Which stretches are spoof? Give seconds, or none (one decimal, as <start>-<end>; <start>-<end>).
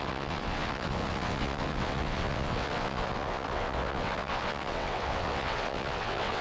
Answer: 0.0-6.4